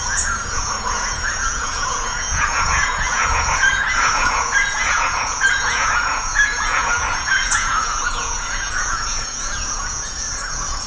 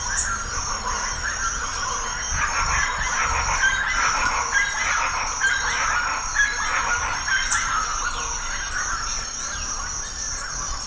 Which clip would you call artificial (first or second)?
first